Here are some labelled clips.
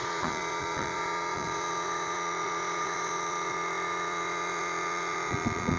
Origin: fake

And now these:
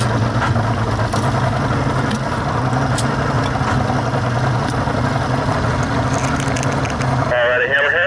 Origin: real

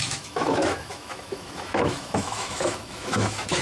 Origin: fake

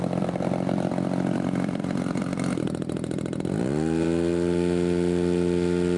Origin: real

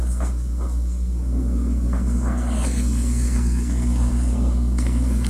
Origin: fake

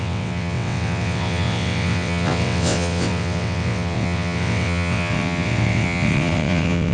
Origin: fake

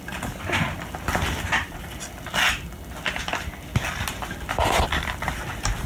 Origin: real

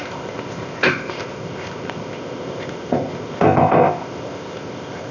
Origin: fake